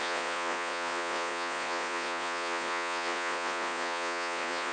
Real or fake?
fake